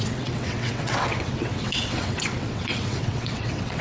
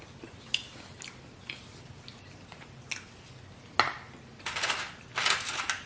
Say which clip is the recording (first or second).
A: second